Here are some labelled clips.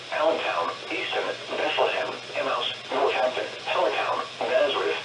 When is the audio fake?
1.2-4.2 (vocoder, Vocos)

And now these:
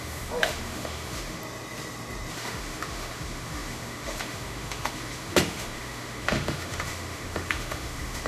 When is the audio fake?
0.0-1.4 (autoencoder, DAC-VAE); 2.3-8.3

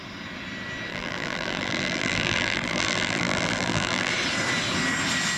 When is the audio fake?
0.9-4.1 (vocoder, BigVGAN v2)

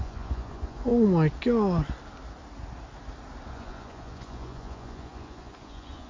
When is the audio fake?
0.0-0.9 (vocoder, Vocos); 3.5-6.1

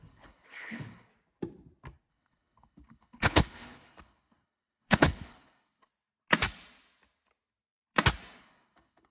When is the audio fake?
0.0-1.1 (codec, HILCodec); 2.1-5.9; 8.4-9.1